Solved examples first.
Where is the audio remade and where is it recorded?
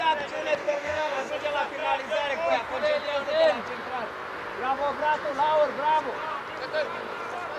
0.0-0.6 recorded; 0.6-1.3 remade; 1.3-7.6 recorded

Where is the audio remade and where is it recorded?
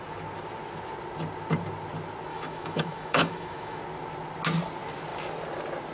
0.0-2.3 recorded; 2.3-3.8 remade; 3.8-5.9 recorded